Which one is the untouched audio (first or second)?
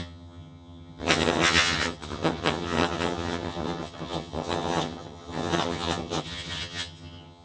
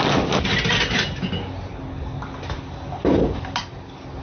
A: second